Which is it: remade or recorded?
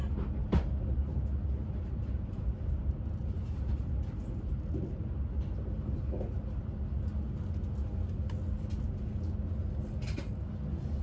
recorded